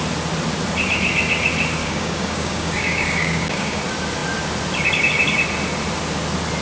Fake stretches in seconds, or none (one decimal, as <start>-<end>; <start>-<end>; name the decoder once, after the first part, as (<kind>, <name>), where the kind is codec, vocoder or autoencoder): 1.8-3.8 (codec, DAC)